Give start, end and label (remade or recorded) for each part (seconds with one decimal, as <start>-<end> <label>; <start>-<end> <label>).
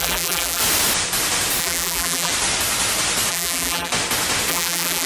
0.0-0.6 remade; 0.6-1.6 recorded; 1.6-2.3 remade; 2.3-3.3 recorded; 3.3-3.9 remade; 3.9-4.5 recorded; 4.5-5.1 remade